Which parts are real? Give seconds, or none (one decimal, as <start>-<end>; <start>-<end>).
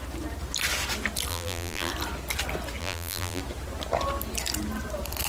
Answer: 0.0-1.3; 1.9-2.8; 3.4-5.3